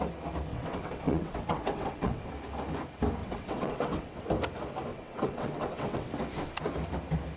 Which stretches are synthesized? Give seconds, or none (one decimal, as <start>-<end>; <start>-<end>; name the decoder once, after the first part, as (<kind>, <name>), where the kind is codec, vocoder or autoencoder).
0.5-2.3 (vocoder, WaveNeXt); 3.2-4.2; 4.9-6.1